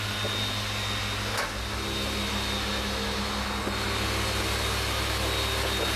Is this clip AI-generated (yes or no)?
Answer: no